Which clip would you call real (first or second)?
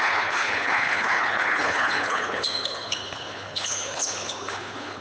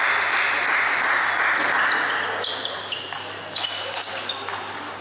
second